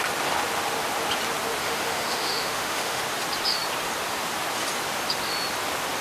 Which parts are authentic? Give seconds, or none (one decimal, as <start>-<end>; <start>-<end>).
0.0-1.6; 3.0-6.0